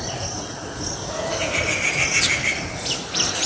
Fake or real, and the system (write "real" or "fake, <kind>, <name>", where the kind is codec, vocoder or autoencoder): fake, vocoder, BigVGAN v2